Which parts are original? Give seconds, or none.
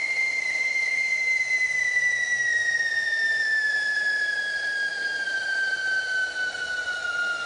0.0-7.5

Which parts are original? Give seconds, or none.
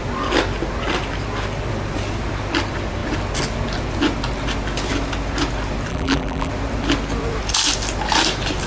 0.0-5.9; 6.5-8.7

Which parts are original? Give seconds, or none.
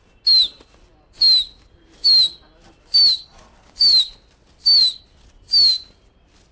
0.0-6.5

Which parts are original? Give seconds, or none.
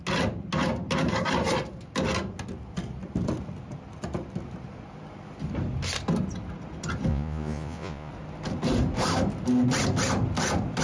0.0-7.1; 8.1-10.8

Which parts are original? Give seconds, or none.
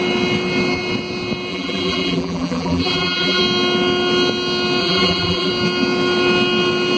0.0-1.5; 3.4-4.8; 5.5-7.0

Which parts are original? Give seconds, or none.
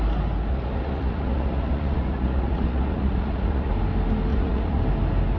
0.0-0.5; 3.7-4.3; 4.8-5.4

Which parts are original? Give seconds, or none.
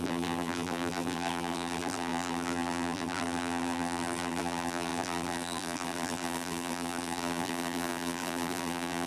none